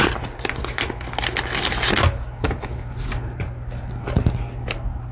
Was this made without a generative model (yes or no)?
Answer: yes